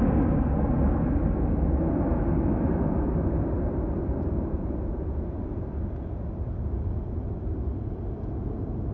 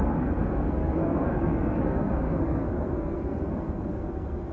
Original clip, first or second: first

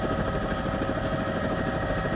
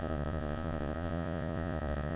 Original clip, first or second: first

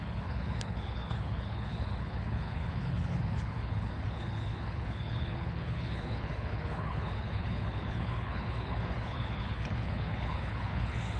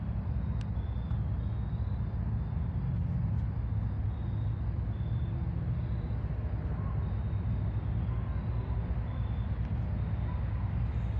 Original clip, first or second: second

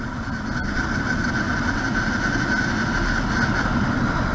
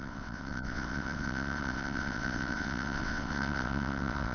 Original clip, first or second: first